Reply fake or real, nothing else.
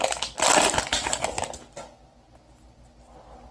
real